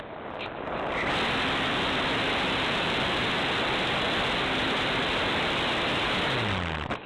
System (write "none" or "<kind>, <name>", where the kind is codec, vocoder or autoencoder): none